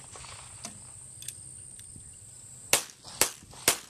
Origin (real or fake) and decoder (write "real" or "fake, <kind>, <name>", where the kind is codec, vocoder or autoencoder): real